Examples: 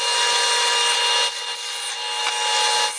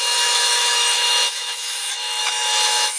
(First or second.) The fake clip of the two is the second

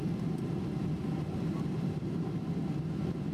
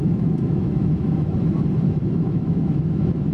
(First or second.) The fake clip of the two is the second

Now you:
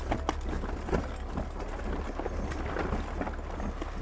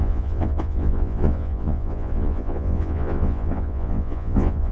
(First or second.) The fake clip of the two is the second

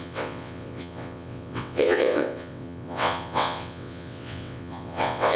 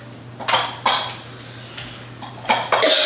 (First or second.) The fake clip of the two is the first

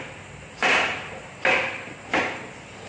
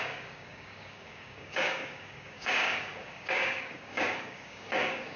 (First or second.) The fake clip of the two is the second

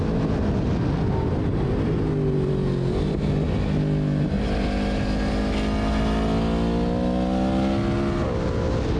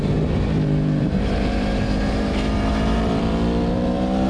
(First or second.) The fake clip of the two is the second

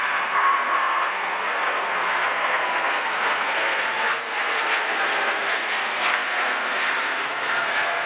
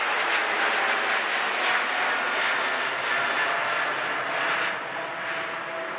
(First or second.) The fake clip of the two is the first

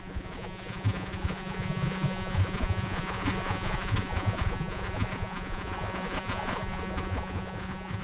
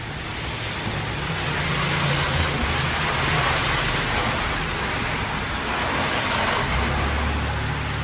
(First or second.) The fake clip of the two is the first